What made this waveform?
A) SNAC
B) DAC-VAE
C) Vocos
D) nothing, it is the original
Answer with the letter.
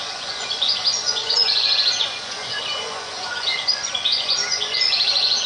C